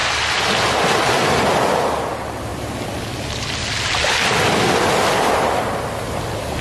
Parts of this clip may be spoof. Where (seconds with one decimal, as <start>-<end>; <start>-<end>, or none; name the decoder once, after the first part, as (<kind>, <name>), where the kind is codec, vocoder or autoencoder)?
none